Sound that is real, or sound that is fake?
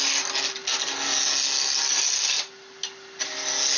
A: real